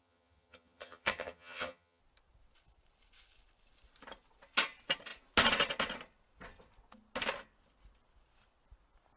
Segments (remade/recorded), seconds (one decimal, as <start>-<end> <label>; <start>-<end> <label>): 0.0-2.0 remade; 2.0-9.2 recorded